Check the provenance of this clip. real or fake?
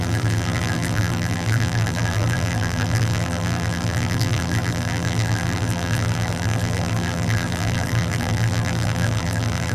fake